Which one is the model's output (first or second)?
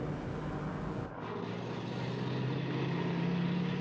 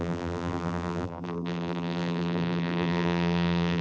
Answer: second